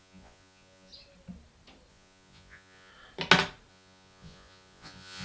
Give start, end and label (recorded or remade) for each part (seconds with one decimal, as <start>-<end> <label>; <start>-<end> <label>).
0.0-0.9 remade; 0.9-1.9 recorded; 1.9-2.9 remade; 2.9-3.7 recorded; 3.7-5.2 remade